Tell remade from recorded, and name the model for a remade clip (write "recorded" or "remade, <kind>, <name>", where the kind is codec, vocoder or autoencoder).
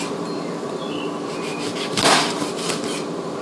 recorded